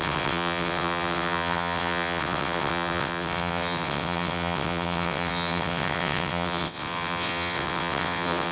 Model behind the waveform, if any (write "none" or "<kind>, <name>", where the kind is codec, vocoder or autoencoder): vocoder, WaveNeXt